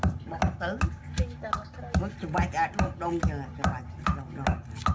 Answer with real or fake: real